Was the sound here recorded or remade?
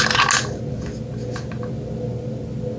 recorded